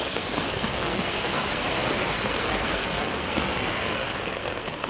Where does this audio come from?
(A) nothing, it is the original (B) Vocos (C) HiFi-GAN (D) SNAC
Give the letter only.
D